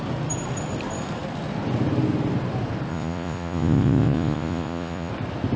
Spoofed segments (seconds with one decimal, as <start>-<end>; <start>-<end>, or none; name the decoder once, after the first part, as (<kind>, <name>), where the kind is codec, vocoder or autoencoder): 2.9-5.1 (vocoder, Vocos)

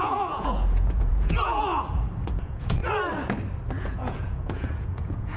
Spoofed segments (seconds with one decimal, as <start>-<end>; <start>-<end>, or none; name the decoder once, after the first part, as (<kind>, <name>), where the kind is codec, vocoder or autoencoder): 0.0-1.8 (vocoder, Vocos); 2.4-2.8; 3.8-5.4

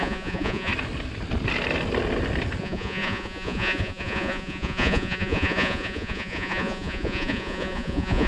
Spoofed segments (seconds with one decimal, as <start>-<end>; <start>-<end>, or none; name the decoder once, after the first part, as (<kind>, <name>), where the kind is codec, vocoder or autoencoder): 0.0-0.7 (vocoder, Vocos); 2.6-8.3

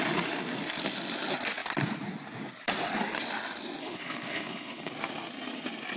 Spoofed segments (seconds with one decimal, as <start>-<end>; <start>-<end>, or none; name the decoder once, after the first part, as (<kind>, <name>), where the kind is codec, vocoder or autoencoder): 3.8-4.9 (codec, HILCodec)

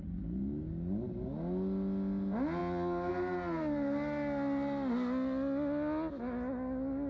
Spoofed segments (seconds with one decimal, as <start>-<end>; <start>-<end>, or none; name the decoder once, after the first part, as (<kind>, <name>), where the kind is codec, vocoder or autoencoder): none